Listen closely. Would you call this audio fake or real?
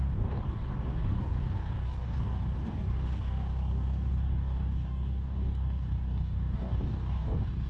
fake